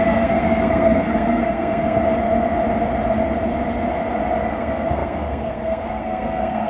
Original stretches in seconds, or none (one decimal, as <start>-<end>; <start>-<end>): 2.0-4.5